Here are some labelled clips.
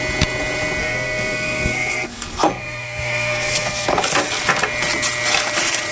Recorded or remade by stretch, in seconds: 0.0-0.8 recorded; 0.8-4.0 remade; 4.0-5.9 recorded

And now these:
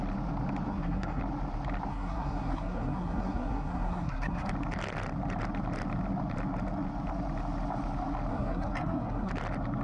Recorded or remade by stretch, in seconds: 0.0-0.7 recorded; 0.7-1.2 remade; 1.2-1.9 recorded; 1.9-4.5 remade; 4.5-8.3 recorded; 8.3-9.3 remade; 9.3-9.8 recorded

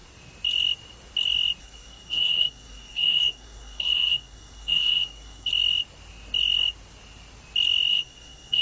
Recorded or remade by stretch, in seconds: 0.0-1.6 recorded; 1.6-5.5 remade; 5.5-7.9 recorded; 7.9-8.6 remade

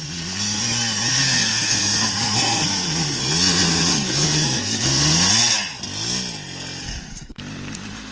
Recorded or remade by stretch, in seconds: 0.0-1.1 recorded; 1.1-3.2 remade; 3.2-3.9 recorded; 3.9-5.3 remade; 5.3-6.8 recorded; 6.8-7.4 remade; 7.4-8.1 recorded

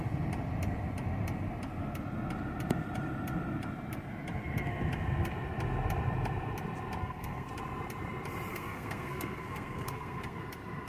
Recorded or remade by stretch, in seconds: 0.0-7.0 recorded; 7.0-7.5 remade; 7.5-8.5 recorded; 8.5-10.4 remade; 10.4-10.9 recorded

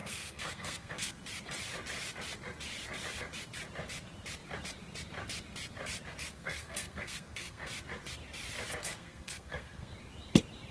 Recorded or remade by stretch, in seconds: 0.0-1.2 remade; 1.2-6.3 recorded; 6.3-7.7 remade; 7.7-8.8 recorded; 8.8-9.9 remade; 9.9-10.7 recorded

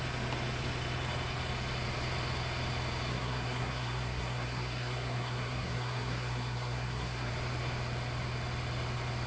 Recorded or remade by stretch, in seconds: 0.0-3.1 recorded; 3.1-7.3 remade; 7.3-9.3 recorded